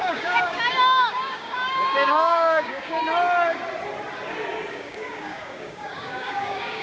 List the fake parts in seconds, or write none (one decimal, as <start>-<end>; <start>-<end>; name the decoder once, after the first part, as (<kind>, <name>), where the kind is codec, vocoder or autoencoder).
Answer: 0.0-3.0 (codec, DAC); 4.7-6.8